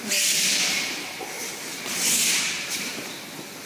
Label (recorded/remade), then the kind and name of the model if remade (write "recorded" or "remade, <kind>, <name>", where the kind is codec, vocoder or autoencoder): recorded